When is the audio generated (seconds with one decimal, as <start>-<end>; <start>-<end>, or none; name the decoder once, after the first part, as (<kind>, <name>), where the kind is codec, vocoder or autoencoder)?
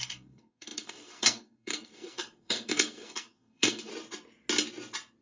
0.0-3.9 (codec, SNAC)